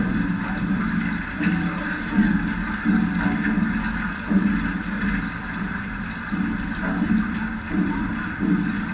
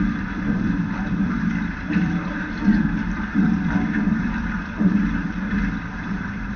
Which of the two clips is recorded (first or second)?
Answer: first